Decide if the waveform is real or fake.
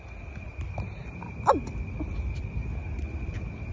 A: real